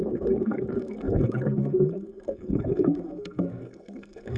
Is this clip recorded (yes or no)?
no